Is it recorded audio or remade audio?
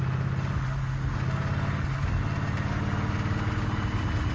recorded